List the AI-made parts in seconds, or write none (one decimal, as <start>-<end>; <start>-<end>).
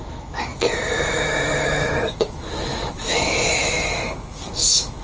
0.0-0.5; 1.2-5.0